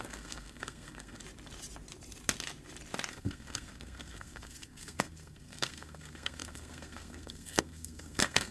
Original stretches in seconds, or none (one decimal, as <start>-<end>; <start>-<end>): 1.2-3.1